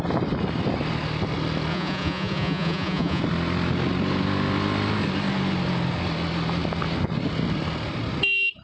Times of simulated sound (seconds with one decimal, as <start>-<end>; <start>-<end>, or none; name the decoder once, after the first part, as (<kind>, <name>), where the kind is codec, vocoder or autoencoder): 1.7-3.2 (vocoder, Vocos)